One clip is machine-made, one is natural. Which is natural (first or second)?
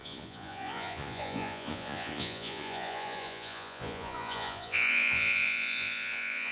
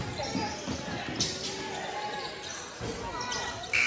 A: second